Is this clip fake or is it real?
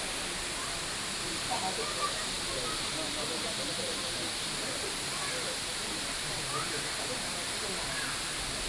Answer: real